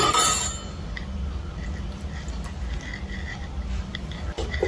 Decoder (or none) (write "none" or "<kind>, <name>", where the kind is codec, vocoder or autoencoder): none